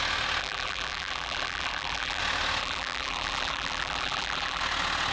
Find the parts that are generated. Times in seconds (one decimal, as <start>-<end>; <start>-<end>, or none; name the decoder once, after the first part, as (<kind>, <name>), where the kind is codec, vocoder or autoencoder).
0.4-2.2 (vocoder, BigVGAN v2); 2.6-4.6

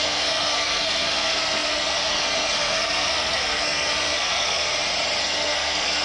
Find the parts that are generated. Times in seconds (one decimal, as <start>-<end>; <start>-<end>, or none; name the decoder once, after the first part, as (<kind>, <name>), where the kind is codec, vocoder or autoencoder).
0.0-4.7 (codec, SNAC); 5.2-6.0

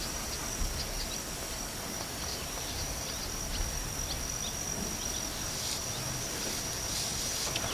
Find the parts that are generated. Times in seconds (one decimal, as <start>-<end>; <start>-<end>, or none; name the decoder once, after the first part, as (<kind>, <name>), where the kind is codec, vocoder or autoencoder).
2.3-3.2 (vocoder, BigVGAN v2)

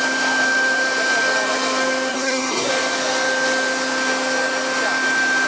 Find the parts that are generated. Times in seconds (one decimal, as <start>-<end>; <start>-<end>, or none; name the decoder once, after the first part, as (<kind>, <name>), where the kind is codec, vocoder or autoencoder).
2.1-2.7 (codec, SNAC)

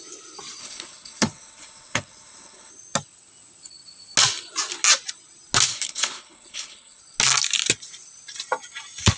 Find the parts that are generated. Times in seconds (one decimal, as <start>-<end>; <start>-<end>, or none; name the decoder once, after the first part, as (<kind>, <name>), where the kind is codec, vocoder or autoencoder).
0.6-2.7 (codec, HILCodec); 5.7-7.0

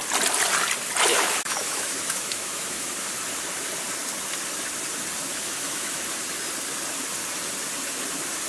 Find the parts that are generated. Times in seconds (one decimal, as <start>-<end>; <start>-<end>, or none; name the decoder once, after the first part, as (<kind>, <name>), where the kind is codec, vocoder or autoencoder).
1.1-2.9 (autoencoder, DAC-VAE); 5.3-6.0

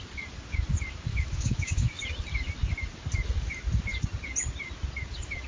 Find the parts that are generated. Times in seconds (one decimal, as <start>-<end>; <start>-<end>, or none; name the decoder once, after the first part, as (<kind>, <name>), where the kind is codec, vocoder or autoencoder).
1.1-2.1 (autoencoder, DAC-VAE)

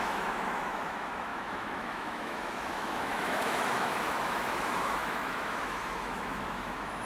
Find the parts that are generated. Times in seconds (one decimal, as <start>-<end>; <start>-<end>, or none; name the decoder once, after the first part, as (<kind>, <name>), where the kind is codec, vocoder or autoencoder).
0.0-7.1 (autoencoder, DAC-VAE)